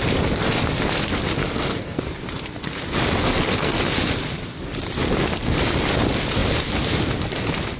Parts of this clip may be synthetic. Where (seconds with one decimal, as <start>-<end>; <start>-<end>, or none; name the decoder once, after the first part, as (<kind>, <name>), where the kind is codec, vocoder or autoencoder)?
1.4-2.0 (codec, SNAC); 3.2-3.8